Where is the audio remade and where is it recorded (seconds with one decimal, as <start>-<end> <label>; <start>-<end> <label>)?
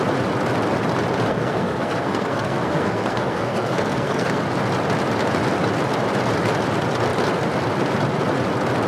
0.0-1.3 recorded; 1.3-4.4 remade; 4.4-8.9 recorded